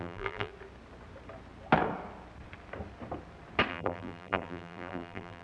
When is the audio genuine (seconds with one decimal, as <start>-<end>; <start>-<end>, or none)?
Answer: 0.5-3.7